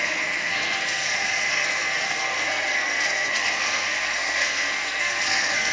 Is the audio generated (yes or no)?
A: yes